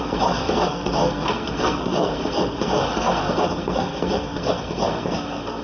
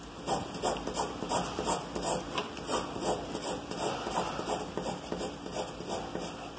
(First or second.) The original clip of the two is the second